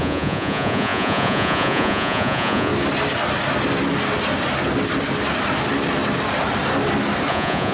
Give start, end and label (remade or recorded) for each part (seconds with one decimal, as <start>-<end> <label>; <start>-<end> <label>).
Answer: 0.0-2.7 remade; 2.7-7.3 recorded; 7.3-7.7 remade